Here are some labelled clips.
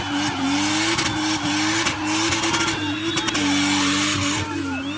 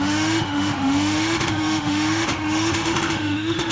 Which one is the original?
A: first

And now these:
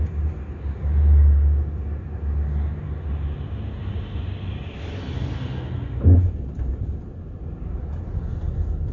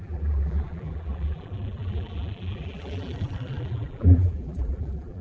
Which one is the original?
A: first